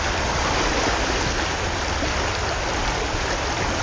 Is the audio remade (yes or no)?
yes